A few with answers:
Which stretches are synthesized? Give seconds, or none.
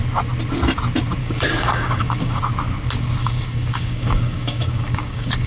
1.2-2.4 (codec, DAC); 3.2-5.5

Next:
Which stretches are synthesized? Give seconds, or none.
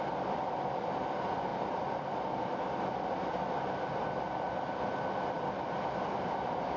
none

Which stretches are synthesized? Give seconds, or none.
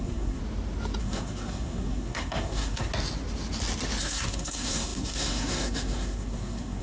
0.0-0.4 (codec, SNAC); 1.0-2.9; 4.0-6.8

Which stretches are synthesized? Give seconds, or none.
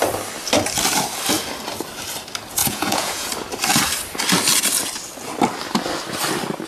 2.6-3.3 (vocoder, Vocos)